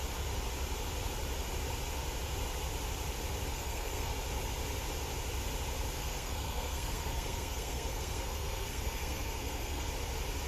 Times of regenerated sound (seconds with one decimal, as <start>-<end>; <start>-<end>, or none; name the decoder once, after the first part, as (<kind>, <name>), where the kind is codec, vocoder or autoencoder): 3.5-4.1 (codec, SNAC); 6.0-9.9